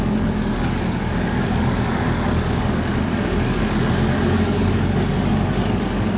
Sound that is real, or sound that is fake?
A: fake